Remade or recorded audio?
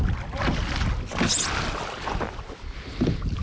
recorded